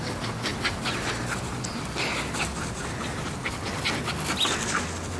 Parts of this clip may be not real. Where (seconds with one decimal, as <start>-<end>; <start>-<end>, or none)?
none